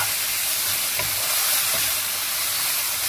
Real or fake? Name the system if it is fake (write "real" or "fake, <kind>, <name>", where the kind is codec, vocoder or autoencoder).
real